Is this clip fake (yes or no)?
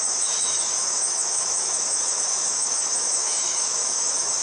yes